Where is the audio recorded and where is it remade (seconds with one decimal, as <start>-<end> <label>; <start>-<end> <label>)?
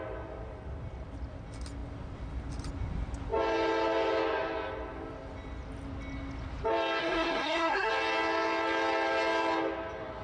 0.0-7.0 recorded; 7.0-7.9 remade; 7.9-10.2 recorded